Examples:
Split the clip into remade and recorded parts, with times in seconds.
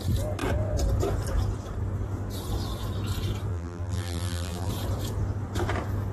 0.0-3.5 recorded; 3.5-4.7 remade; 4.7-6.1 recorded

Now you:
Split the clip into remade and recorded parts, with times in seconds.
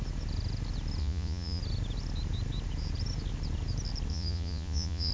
0.0-1.0 recorded; 1.0-1.6 remade; 1.6-4.1 recorded; 4.1-5.1 remade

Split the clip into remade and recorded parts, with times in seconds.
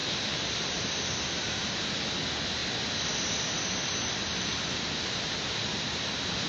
0.0-0.9 remade; 0.9-6.5 recorded